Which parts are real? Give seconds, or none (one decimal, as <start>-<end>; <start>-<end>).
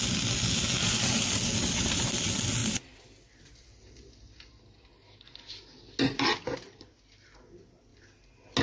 0.0-8.6